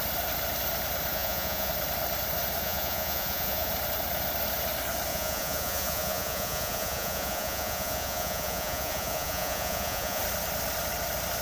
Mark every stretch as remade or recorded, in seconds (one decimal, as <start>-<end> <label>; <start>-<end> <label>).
0.0-1.1 recorded; 1.1-1.7 remade; 1.7-2.6 recorded; 2.6-3.7 remade; 3.7-5.1 recorded; 5.1-10.2 remade; 10.2-11.4 recorded